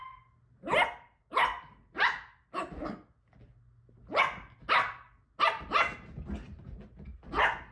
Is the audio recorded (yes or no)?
yes